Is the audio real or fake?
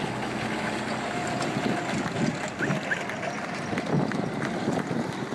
real